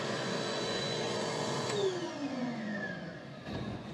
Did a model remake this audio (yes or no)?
yes